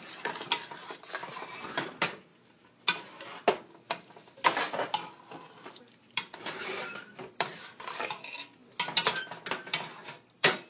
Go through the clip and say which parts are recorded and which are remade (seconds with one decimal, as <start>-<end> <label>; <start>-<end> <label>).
0.0-2.3 remade; 2.3-5.8 recorded; 5.8-8.6 remade; 8.6-9.2 recorded; 9.2-10.7 remade